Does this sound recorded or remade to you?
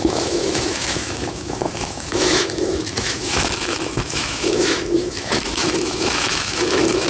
remade